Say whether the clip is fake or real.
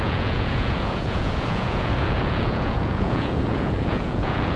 fake